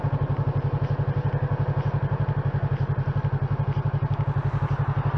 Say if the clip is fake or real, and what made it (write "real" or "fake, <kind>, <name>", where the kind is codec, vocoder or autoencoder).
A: real